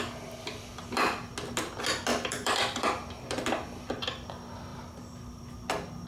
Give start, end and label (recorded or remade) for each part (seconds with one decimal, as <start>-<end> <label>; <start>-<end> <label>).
0.0-2.1 recorded; 2.1-2.9 remade; 2.9-4.7 recorded; 4.7-5.4 remade; 5.4-6.1 recorded